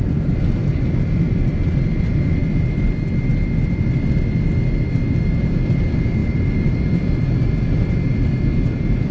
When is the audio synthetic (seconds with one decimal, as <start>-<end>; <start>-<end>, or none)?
0.0-2.4; 5.4-9.1